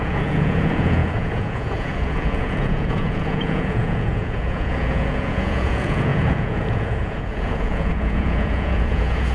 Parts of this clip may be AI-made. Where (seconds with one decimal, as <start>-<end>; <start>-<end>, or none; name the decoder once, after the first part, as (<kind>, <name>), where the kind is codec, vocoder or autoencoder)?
0.0-9.3 (vocoder, Vocos)